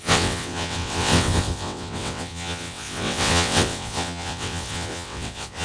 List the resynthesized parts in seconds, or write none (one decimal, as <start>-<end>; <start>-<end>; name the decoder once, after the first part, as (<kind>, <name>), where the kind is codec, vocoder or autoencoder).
0.0-5.6 (vocoder, WaveNeXt)

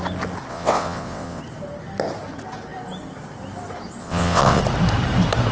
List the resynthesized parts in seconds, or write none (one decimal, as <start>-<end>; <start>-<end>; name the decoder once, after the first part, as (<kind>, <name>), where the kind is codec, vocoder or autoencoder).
0.5-1.4 (vocoder, WaveNeXt); 4.0-4.6

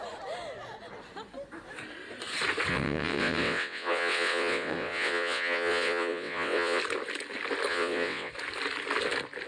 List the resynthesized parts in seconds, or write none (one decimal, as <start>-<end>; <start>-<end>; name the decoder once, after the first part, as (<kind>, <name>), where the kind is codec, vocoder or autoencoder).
2.7-6.8 (vocoder, WaveNeXt); 7.7-8.3

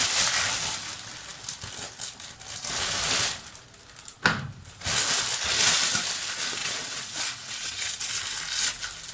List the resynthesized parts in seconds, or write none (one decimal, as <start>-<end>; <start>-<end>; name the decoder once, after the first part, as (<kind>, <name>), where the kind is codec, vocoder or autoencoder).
6.6-8.1 (vocoder, WaveNeXt)

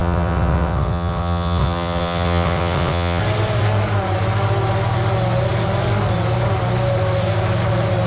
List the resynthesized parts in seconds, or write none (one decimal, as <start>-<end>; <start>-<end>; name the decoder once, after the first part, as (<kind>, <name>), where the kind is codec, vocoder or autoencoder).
0.0-3.2 (vocoder, WaveNeXt)

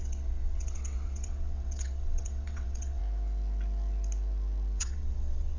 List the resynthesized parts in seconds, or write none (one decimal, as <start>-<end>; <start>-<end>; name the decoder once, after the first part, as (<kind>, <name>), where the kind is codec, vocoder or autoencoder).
0.0-3.0 (vocoder, WaveNeXt); 4.8-5.6